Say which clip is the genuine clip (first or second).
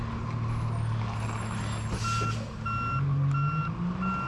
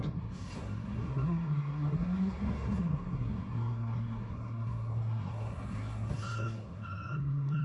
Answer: first